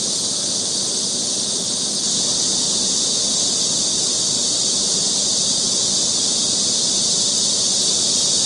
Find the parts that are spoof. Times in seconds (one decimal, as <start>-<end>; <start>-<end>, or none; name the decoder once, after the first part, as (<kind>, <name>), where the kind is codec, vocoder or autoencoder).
none